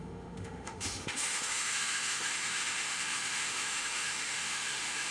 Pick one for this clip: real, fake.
fake